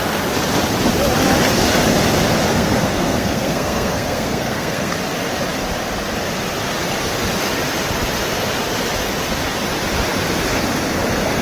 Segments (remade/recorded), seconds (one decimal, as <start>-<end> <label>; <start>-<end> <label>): 0.0-2.5 recorded; 2.5-4.9 remade; 4.9-11.4 recorded